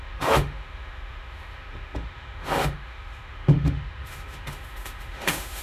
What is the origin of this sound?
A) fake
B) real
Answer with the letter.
A